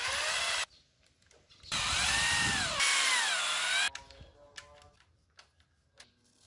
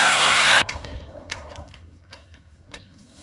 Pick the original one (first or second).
first